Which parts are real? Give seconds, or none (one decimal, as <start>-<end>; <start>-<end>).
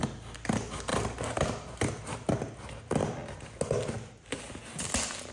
0.0-0.9; 1.8-5.3